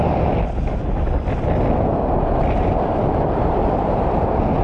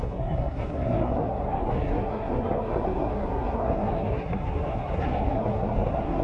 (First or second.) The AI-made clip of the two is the second